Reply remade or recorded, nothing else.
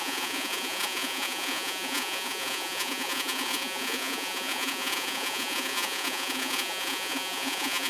remade